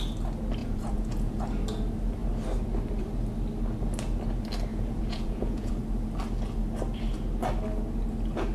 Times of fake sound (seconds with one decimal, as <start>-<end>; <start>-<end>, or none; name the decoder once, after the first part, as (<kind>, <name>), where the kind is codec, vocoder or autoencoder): 0.6-1.4 (vocoder, Vocos); 4.7-5.7